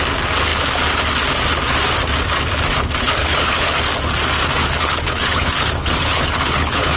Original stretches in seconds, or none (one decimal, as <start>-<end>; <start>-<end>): 0.0-3.2; 3.8-4.6